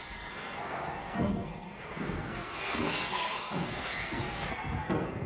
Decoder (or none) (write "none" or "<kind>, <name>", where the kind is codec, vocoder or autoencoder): codec, SNAC